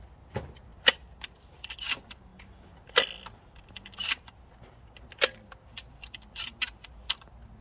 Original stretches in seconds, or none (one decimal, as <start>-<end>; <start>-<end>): 0.0-7.6